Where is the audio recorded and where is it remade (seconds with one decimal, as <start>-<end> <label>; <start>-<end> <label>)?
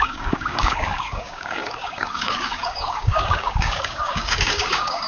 0.0-5.1 remade